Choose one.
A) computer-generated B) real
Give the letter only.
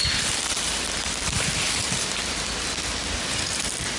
B